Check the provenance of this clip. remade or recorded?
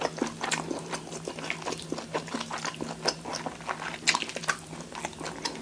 recorded